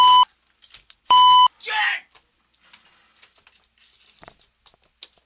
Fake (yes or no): no